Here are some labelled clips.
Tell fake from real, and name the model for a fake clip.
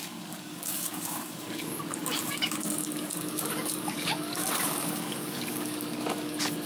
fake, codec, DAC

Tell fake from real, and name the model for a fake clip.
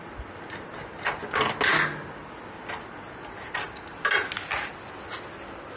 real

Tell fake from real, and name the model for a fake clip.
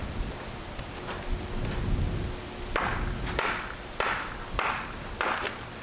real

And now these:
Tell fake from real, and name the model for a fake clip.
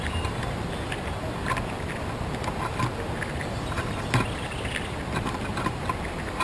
real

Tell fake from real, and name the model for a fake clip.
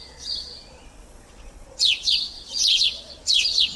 fake, vocoder, Vocos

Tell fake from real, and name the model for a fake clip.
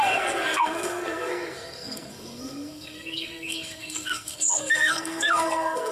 fake, codec, SNAC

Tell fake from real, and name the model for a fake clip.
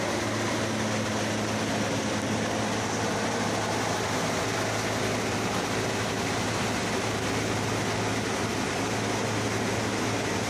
real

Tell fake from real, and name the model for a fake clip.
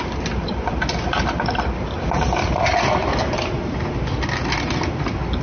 real